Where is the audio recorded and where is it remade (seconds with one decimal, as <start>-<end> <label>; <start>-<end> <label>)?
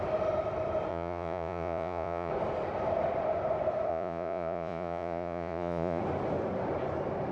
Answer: 0.0-0.9 recorded; 0.9-2.3 remade; 2.3-3.9 recorded; 3.9-6.0 remade; 6.0-7.3 recorded